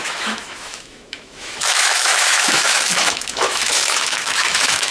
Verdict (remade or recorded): remade